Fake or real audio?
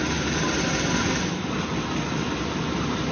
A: real